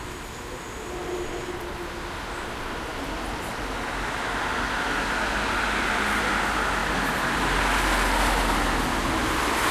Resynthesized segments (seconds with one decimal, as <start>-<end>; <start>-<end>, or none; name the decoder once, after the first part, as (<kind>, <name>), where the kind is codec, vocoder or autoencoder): none